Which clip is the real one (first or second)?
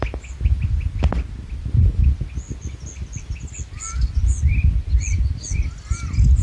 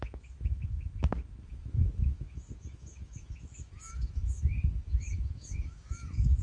first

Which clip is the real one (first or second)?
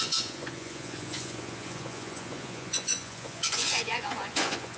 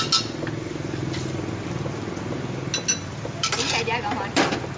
second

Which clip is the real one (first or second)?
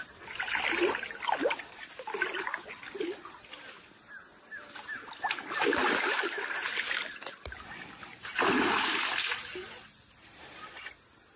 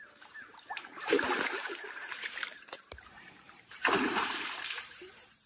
first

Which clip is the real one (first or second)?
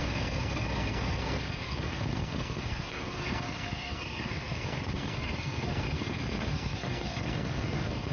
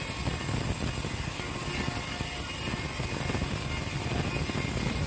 second